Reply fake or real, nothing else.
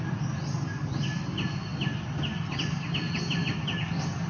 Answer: real